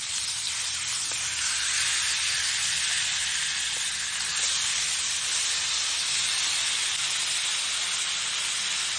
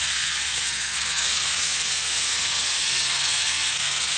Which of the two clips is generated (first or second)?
second